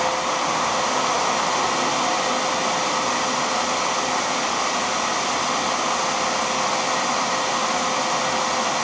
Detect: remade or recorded recorded